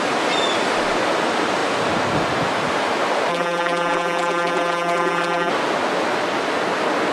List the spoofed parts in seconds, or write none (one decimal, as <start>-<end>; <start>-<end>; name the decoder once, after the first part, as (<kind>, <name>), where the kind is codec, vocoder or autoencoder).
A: 3.3-5.5 (vocoder, BigVGAN v2)